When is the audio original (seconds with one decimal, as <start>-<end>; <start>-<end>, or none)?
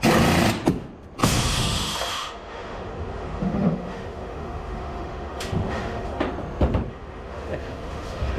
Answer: 0.0-1.2; 6.2-6.9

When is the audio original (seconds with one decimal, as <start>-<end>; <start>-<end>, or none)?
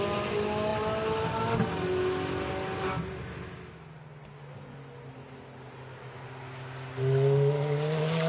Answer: 0.0-0.7; 1.4-8.3